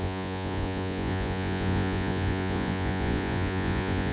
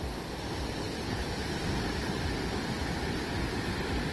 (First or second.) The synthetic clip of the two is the first